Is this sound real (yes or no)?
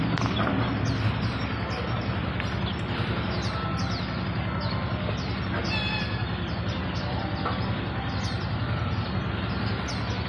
yes